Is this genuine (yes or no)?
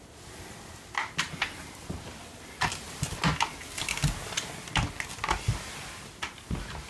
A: yes